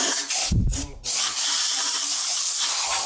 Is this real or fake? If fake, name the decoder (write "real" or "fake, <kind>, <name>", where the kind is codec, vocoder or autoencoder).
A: fake, vocoder, BigVGAN v2